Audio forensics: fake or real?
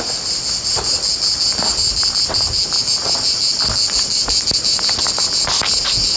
real